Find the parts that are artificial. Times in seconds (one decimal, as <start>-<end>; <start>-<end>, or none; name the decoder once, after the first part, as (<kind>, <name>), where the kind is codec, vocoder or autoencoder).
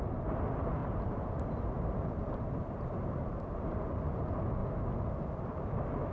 0.8-3.9 (vocoder, BigVGAN v2)